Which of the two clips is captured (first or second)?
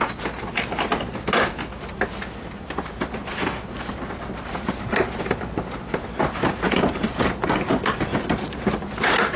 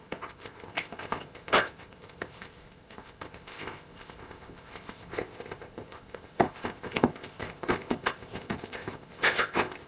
first